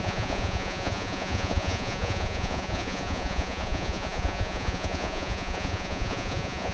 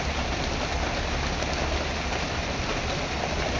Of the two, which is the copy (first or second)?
first